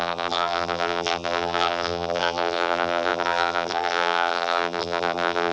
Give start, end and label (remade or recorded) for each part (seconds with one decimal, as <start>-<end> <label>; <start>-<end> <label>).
0.0-5.5 remade